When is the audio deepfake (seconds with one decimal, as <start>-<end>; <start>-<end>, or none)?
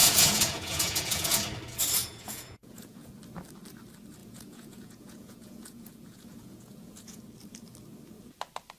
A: 0.0-1.4; 2.0-3.2; 4.2-7.2